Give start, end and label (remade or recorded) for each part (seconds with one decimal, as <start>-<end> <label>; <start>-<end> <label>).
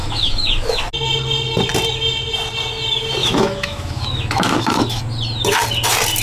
0.0-0.8 remade; 0.8-3.2 recorded; 3.2-5.0 remade; 5.0-6.2 recorded